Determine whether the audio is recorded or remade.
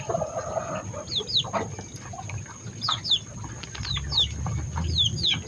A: recorded